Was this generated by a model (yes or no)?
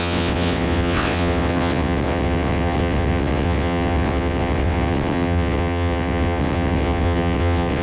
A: yes